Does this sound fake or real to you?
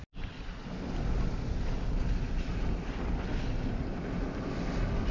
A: real